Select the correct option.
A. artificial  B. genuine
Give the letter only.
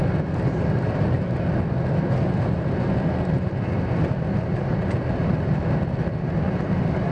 B